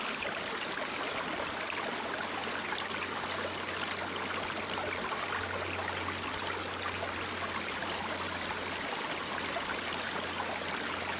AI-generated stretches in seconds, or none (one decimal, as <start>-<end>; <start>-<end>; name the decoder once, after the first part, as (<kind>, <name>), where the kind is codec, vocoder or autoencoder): none